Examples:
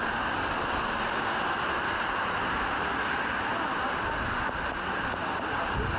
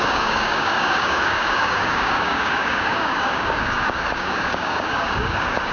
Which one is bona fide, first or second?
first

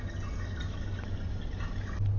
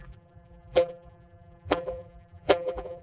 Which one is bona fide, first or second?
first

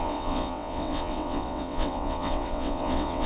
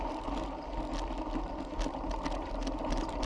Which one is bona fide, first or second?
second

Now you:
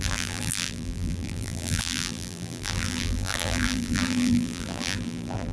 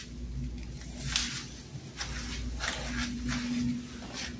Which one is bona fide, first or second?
second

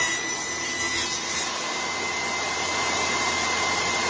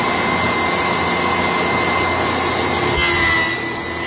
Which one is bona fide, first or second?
second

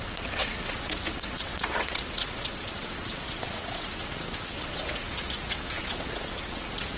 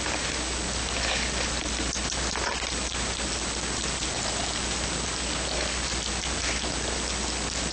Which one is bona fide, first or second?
second